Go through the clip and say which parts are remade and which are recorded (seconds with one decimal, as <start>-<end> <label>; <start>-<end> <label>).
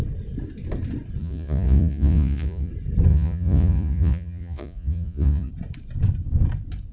0.0-1.2 recorded; 1.2-2.7 remade; 2.7-3.1 recorded; 3.1-5.5 remade; 5.5-6.9 recorded